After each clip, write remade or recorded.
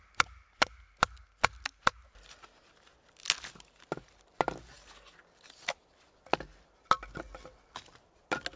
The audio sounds recorded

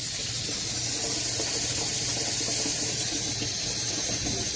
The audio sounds recorded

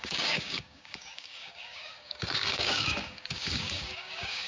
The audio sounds remade